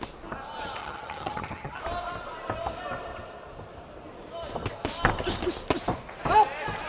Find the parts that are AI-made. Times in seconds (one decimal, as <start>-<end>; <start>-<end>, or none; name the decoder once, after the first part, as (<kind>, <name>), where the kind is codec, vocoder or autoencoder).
0.8-1.8 (vocoder, HiFi-GAN)